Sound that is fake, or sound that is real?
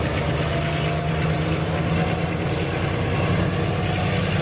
real